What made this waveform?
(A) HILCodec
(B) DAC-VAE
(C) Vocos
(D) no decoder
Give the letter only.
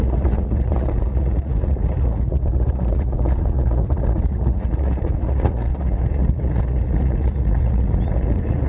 C